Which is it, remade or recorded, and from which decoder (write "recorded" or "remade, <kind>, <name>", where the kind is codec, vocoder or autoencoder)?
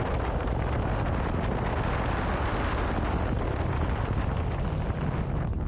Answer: recorded